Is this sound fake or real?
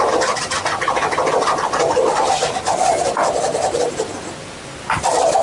real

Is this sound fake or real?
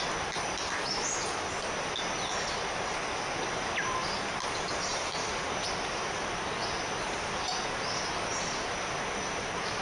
real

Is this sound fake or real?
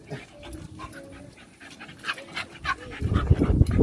real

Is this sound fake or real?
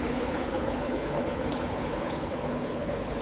fake